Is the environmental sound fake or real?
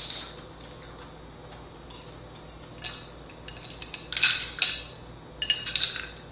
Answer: real